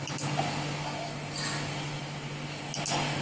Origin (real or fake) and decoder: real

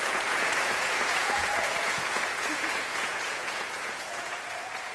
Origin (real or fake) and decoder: fake, vocoder, Vocos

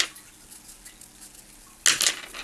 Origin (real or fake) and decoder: real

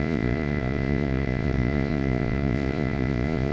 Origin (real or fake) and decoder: fake, vocoder, Vocos